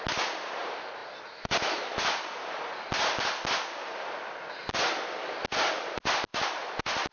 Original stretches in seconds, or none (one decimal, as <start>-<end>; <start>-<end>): 0.0-7.1